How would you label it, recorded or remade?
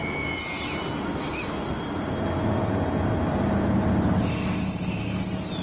recorded